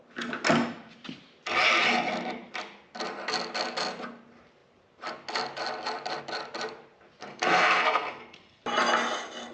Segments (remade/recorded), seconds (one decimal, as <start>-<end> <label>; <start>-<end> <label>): 0.0-7.2 recorded; 7.2-8.6 remade; 8.6-9.5 recorded